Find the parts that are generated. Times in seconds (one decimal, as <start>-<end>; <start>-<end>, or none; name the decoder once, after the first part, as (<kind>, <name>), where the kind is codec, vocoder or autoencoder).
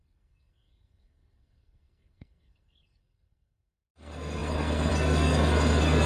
0.0-6.1 (codec, SNAC)